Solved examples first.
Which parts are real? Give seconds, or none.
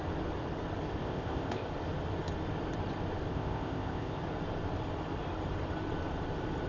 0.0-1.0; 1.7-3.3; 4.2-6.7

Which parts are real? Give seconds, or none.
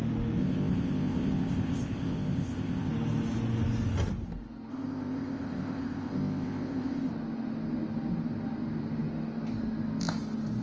0.0-0.4; 2.9-4.7; 7.1-10.6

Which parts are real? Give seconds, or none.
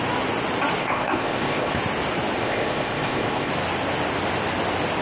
0.0-0.8; 1.8-2.4; 3.5-5.0